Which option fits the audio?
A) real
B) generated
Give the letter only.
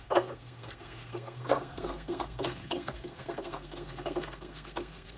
B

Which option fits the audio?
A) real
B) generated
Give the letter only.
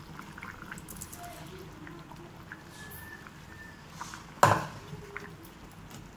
A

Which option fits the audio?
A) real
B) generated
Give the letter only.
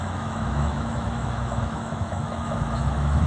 B